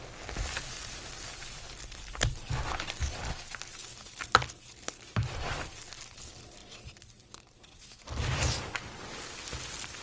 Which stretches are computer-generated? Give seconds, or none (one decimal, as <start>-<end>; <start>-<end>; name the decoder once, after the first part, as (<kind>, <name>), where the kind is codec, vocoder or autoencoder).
none

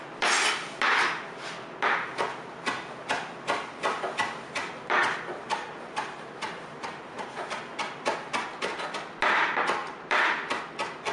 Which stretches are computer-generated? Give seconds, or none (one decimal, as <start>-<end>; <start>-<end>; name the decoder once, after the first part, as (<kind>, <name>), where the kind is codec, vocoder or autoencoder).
5.0-7.6 (vocoder, BigVGAN v2)

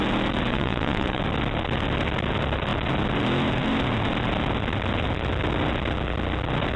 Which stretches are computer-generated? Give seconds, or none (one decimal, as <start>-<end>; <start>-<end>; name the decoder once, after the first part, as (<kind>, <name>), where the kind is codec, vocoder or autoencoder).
0.5-1.2 (vocoder, WaveNeXt)